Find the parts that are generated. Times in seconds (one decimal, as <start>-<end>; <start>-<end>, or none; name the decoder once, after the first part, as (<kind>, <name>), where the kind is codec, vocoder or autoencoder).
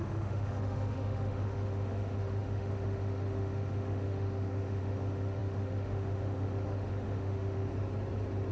0.0-7.7 (autoencoder, DAC-VAE)